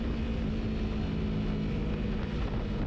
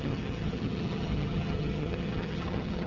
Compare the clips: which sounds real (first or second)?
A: first